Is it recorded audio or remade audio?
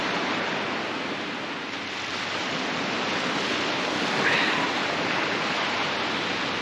recorded